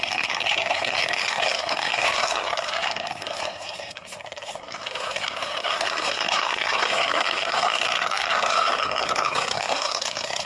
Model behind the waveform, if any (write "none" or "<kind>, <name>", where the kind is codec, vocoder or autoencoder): codec, SNAC